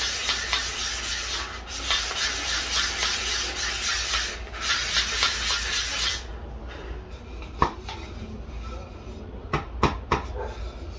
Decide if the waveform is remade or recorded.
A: recorded